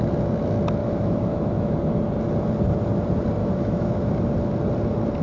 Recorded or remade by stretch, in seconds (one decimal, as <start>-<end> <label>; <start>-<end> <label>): 0.0-0.8 recorded; 0.8-2.0 remade; 2.0-3.4 recorded; 3.4-4.1 remade; 4.1-5.2 recorded